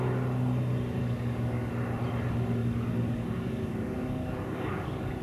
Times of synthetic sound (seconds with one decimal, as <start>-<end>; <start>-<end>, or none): 1.0-1.7; 2.6-5.2

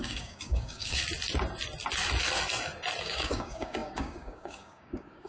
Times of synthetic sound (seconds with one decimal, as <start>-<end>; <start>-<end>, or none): 0.0-1.0; 3.0-5.3

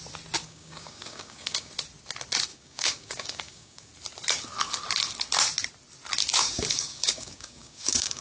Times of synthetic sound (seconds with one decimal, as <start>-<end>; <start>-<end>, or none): 0.4-1.7; 2.5-3.9; 6.3-8.2

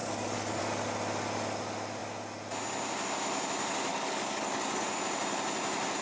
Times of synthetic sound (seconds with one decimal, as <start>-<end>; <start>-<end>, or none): 0.0-0.6; 3.9-5.0

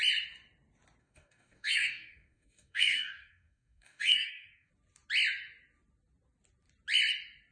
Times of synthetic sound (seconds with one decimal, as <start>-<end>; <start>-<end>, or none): 1.0-4.7

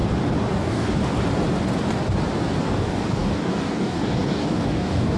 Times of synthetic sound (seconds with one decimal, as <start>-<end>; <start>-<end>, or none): 0.5-1.0; 2.6-5.2

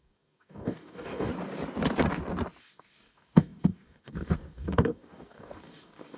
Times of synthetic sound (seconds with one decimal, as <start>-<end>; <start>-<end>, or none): 0.0-1.3; 2.6-6.2